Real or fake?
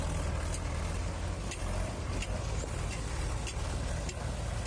real